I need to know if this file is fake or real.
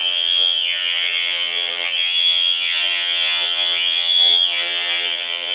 fake